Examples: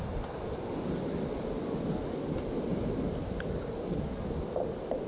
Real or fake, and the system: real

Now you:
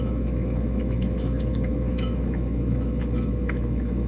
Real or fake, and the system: fake, autoencoder, DAC-VAE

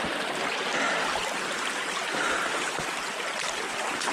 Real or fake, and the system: real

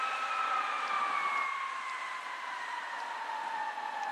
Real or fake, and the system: real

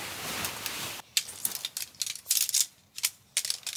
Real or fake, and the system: real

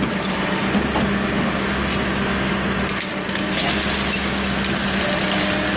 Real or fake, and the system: real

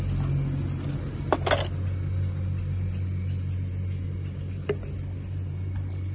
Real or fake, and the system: real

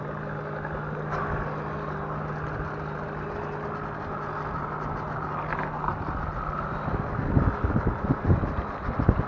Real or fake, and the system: real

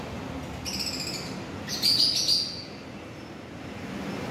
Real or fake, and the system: real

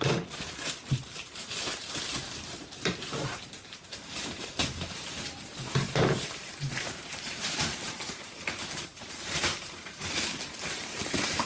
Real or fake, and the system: fake, vocoder, BigVGAN v2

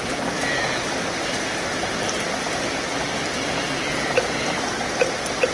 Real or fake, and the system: real